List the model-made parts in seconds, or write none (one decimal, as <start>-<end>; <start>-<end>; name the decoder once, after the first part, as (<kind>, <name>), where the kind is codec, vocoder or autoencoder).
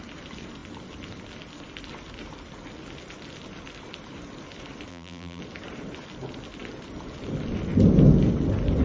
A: 4.9-5.4 (vocoder, BigVGAN v2)